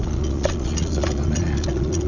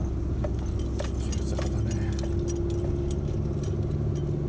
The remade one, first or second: first